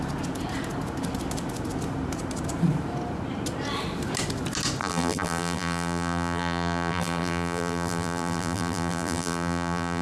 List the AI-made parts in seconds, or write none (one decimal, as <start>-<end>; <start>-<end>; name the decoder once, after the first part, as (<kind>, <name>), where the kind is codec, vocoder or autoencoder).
4.8-10.0 (vocoder, BigVGAN v2)